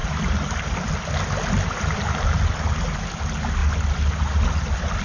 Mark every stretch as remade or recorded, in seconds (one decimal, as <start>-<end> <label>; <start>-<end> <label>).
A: 0.0-5.0 recorded